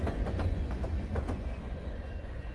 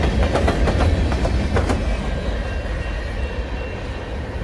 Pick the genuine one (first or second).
second